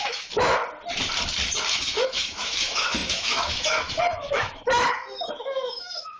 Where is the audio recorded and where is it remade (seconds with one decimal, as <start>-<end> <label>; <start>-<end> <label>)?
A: 0.0-0.6 remade; 0.6-1.7 recorded; 1.7-6.2 remade